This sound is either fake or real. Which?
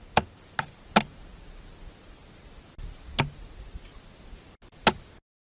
real